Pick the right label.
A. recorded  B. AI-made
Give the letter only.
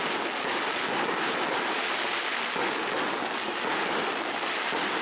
A